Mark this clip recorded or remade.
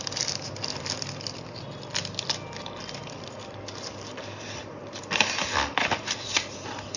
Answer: recorded